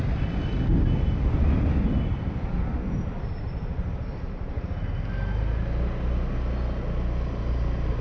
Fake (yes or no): no